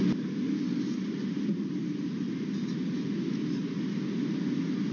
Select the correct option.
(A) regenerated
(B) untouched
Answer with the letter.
B